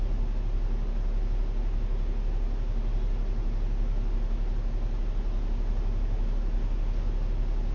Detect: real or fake real